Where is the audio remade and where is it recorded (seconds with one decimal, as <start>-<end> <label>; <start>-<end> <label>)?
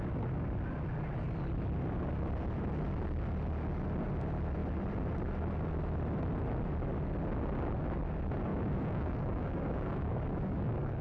0.0-8.5 recorded; 8.5-11.0 remade